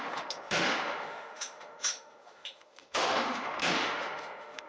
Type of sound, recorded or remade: remade